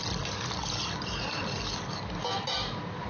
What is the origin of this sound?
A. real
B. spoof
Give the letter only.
A